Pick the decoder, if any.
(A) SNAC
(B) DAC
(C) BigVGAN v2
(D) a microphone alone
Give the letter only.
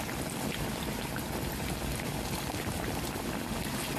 D